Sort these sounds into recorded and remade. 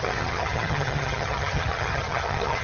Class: remade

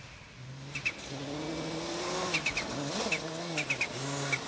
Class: recorded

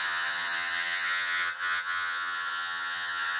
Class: remade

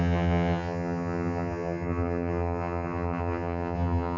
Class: remade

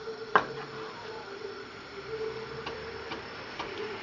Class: recorded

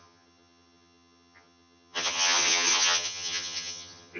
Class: remade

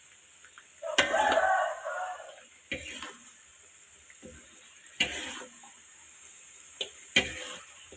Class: recorded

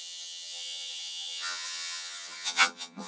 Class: remade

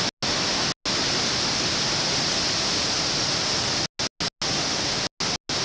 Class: recorded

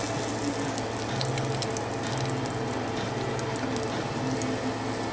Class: recorded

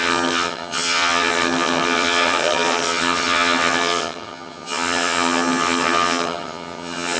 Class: remade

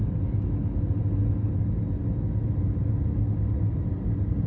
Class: recorded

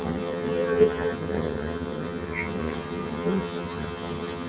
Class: remade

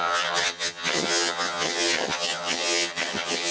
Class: remade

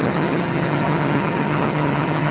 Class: remade